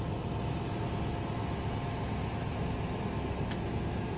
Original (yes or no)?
yes